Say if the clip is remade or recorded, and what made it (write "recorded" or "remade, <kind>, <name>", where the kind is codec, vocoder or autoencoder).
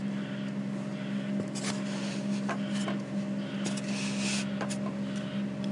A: recorded